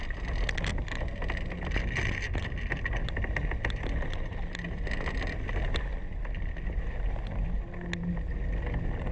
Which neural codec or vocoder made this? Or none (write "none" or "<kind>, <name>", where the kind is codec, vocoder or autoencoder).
none